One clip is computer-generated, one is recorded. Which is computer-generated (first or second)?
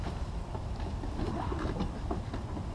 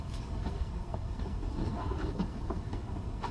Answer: second